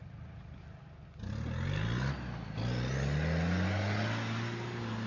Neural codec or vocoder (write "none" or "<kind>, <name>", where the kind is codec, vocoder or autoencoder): none